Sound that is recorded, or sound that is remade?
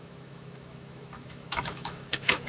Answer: remade